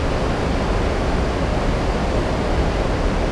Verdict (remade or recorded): recorded